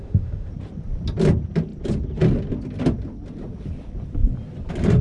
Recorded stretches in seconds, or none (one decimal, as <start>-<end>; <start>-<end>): 0.5-5.0